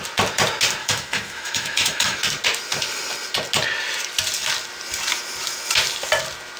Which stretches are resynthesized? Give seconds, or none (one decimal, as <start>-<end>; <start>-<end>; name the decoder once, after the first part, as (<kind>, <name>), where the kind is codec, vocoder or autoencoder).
0.8-2.2 (autoencoder, DAC-VAE)